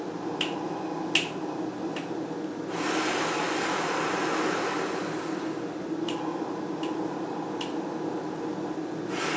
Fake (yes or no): no